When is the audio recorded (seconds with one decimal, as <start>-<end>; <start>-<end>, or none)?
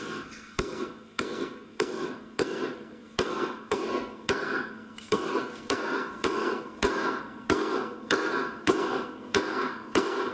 none